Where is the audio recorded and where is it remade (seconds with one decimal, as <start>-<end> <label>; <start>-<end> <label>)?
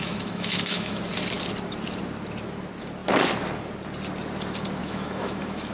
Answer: 0.0-1.0 remade; 1.0-4.8 recorded; 4.8-5.7 remade